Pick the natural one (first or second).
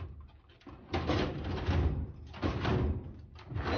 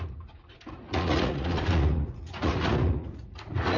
first